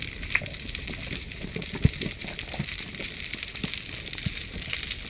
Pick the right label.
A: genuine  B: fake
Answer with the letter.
A